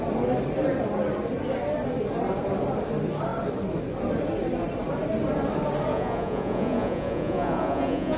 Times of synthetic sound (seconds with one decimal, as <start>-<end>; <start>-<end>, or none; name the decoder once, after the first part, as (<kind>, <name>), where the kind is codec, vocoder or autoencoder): 5.9-8.2 (vocoder, Vocos)